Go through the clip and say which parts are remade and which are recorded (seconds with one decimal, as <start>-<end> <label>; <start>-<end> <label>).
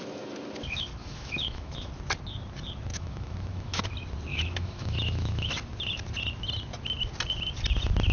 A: 0.0-1.0 recorded; 1.0-1.9 remade; 1.9-2.9 recorded; 2.9-3.9 remade; 3.9-4.3 recorded; 4.3-5.5 remade; 5.5-8.1 recorded